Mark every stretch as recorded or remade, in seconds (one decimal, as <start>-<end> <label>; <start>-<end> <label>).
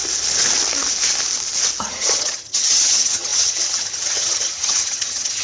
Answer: 0.0-1.8 recorded; 1.8-5.4 remade